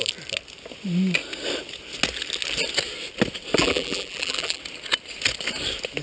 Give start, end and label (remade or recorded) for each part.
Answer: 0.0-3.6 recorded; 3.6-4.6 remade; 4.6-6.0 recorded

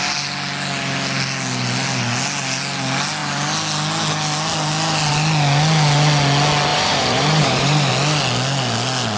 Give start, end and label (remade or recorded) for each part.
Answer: 0.0-6.7 recorded; 6.7-7.9 remade; 7.9-9.2 recorded

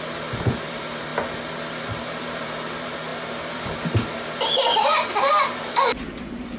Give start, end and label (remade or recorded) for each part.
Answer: 0.0-1.1 remade; 1.1-1.7 recorded; 1.7-6.6 remade

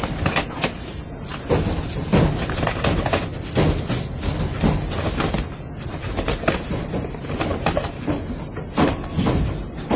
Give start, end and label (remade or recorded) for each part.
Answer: 0.0-7.5 recorded; 7.5-8.1 remade; 8.1-10.0 recorded

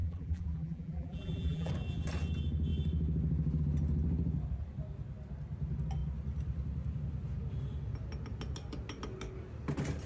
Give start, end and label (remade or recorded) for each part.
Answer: 0.0-1.7 remade; 1.7-10.1 recorded